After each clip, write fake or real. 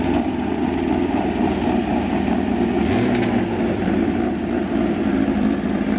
fake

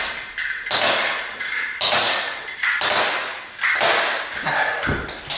real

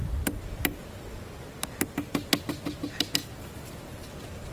real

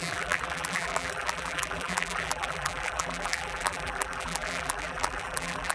fake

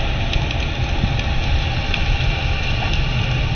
fake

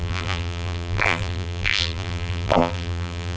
fake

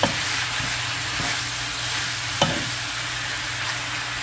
real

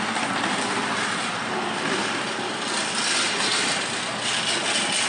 real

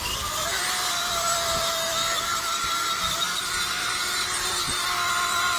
fake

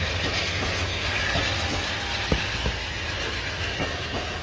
real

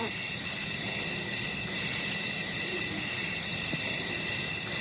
fake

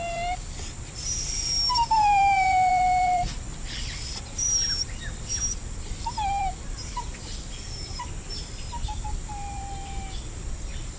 fake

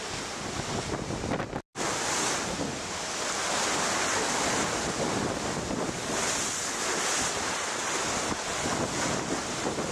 real